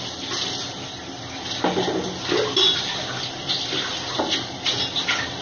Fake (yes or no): no